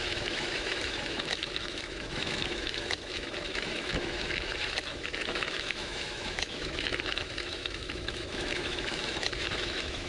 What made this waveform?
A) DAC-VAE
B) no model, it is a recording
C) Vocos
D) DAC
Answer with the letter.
A